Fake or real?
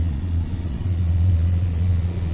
fake